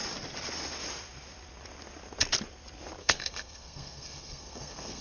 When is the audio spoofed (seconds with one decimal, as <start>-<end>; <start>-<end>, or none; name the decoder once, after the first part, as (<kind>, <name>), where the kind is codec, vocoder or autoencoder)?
3.0-5.0 (codec, SNAC)